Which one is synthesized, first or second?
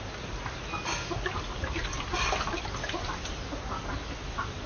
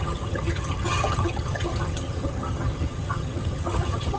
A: second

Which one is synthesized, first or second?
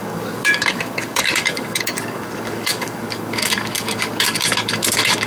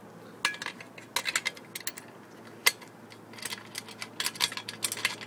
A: first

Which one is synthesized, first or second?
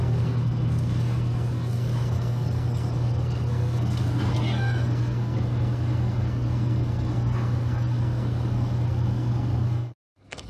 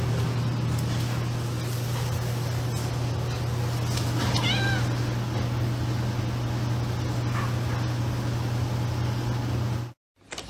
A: first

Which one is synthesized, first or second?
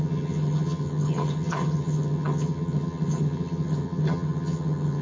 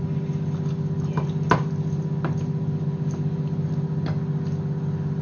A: first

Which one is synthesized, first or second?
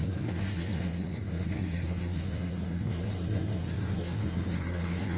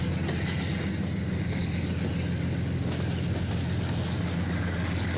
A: first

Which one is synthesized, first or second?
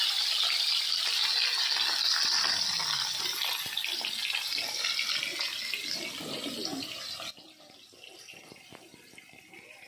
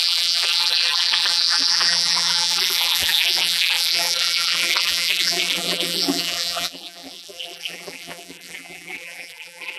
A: second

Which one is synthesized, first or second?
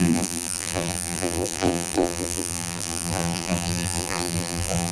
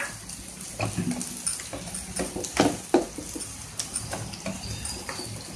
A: first